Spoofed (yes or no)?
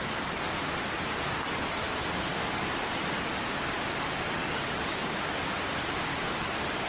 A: no